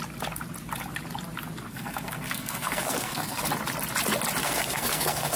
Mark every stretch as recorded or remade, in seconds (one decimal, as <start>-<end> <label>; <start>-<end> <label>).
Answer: 0.0-1.7 recorded; 1.7-3.4 remade; 3.4-4.4 recorded; 4.4-5.4 remade